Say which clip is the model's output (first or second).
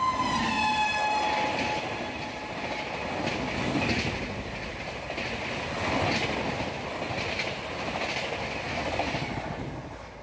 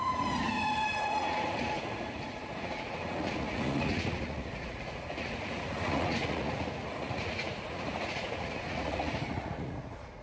second